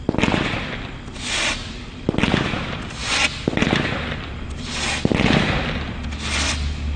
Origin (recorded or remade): recorded